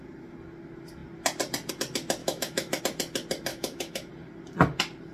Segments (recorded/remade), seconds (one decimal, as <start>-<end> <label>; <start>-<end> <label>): 0.0-2.2 recorded; 2.2-2.8 remade; 2.8-3.5 recorded; 3.5-4.1 remade; 4.1-5.1 recorded